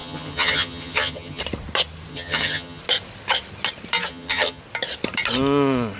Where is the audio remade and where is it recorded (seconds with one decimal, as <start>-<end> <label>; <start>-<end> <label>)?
0.0-1.4 remade; 1.4-2.1 recorded; 2.1-2.8 remade; 2.8-4.1 recorded; 4.1-4.6 remade; 4.6-6.0 recorded